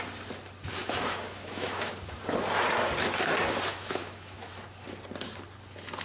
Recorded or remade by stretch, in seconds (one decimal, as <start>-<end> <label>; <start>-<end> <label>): 0.0-0.8 recorded; 0.8-1.9 remade; 1.9-3.7 recorded; 3.7-4.5 remade; 4.5-6.0 recorded